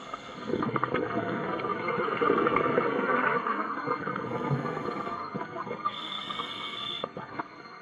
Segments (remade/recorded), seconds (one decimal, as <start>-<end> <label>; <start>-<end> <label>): 0.0-7.8 remade